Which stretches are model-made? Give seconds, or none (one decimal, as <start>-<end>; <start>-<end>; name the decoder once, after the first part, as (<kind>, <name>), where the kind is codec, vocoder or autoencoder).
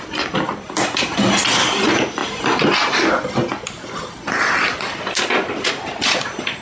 none